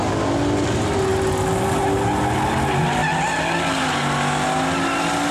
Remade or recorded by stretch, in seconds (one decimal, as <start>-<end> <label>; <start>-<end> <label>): 0.0-5.3 recorded